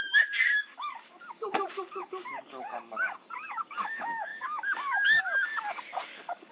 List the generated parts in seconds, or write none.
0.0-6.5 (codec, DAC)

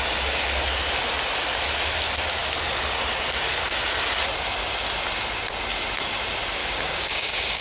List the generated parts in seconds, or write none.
6.6-7.6 (codec, DAC)

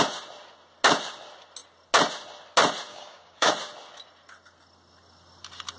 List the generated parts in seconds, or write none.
2.9-3.5 (codec, DAC)

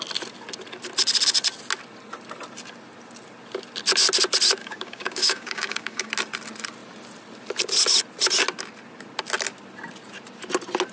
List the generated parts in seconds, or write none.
4.6-6.1 (codec, DAC)

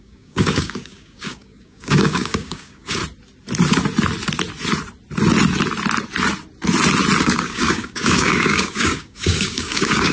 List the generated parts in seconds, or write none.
0.0-3.0 (codec, DAC); 7.2-10.1

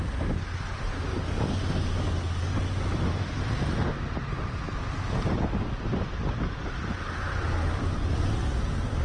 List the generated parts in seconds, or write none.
1.1-2.6 (codec, DAC)

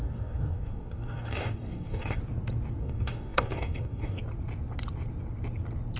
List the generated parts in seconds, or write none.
0.0-2.2 (codec, DAC); 2.8-4.2